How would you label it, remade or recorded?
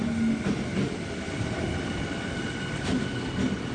recorded